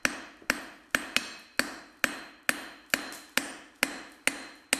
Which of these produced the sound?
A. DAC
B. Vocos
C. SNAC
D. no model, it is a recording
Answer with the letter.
D